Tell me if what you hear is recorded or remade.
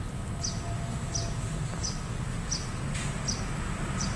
recorded